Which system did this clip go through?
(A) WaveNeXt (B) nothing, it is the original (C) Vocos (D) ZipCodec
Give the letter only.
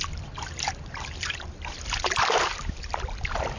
B